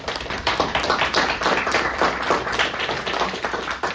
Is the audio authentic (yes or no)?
yes